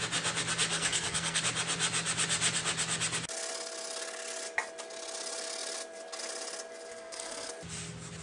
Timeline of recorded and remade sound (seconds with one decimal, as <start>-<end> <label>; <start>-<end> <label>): 0.0-0.7 recorded; 0.7-1.4 remade; 1.4-6.9 recorded; 6.9-7.5 remade; 7.5-8.2 recorded